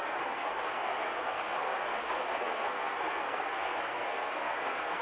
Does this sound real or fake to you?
fake